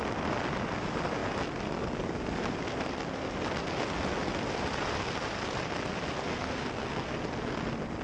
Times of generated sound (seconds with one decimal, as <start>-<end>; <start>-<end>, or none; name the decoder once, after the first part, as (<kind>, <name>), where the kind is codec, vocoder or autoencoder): 6.3-7.1 (codec, SNAC)